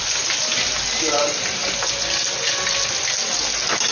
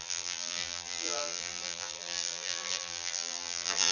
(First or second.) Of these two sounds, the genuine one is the first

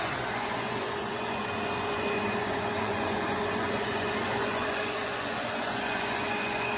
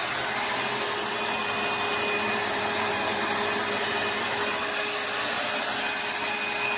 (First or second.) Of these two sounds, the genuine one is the second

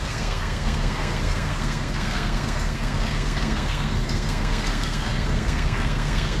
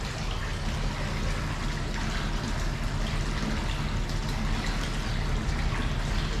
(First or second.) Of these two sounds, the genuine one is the second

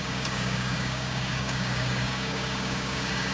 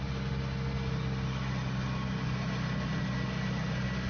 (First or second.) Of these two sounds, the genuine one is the second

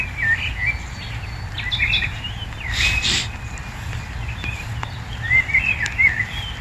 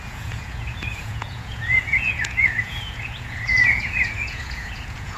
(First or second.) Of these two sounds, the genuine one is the first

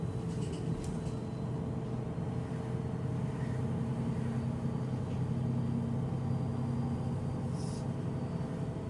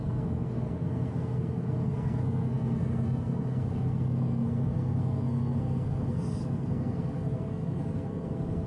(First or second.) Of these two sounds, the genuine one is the first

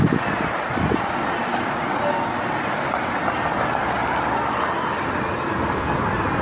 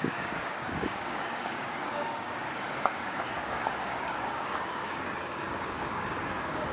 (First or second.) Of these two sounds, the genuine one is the first